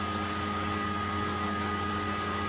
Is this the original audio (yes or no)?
no